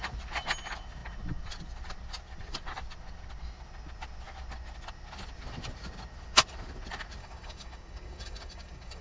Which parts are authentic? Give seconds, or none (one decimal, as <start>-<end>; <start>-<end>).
0.0-7.2